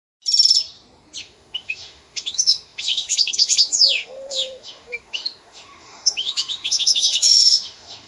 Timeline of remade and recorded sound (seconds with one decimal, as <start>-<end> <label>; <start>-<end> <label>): 0.0-1.2 recorded; 1.2-8.1 remade